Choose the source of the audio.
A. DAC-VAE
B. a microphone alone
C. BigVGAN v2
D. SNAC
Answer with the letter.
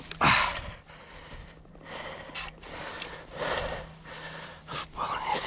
B